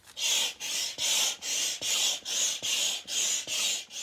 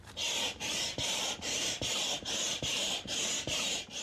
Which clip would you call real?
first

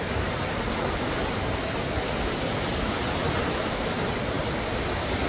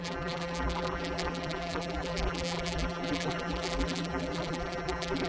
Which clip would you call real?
first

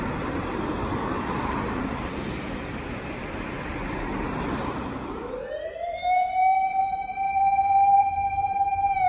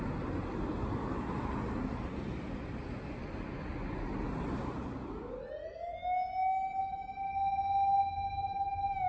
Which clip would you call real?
second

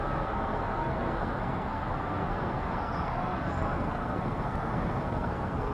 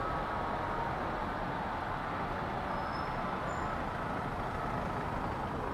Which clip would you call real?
second